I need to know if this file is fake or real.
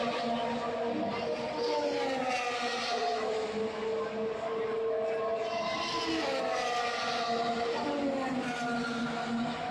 real